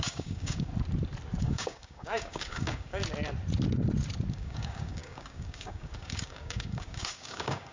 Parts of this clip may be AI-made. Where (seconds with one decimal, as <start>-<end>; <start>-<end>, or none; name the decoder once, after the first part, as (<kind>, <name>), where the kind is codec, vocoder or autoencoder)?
0.0-0.7 (codec, DAC); 1.4-3.0; 4.3-7.7